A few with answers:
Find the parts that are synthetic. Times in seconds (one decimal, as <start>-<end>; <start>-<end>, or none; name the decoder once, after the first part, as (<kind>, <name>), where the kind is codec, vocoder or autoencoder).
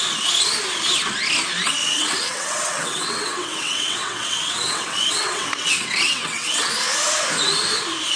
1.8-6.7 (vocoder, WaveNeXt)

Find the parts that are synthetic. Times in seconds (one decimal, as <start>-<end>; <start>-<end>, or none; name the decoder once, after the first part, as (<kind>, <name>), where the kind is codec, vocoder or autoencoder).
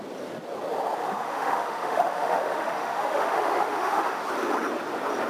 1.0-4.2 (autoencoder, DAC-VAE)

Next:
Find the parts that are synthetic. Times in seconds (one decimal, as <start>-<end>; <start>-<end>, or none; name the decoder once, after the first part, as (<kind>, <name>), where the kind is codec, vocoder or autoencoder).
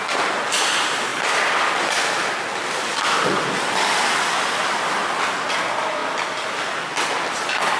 none